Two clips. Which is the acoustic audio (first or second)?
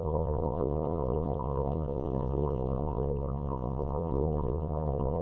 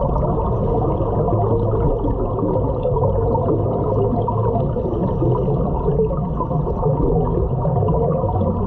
second